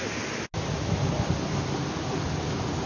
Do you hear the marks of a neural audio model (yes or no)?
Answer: no